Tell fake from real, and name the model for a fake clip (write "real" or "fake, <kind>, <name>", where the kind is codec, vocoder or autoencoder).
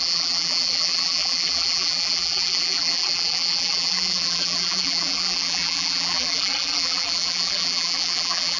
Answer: fake, vocoder, BigVGAN v2